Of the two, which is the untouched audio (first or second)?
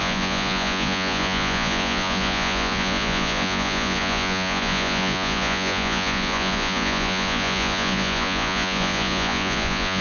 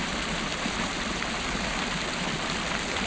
second